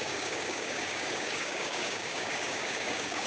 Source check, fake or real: fake